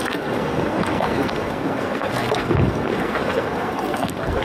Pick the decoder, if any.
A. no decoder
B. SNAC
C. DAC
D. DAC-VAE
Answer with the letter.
B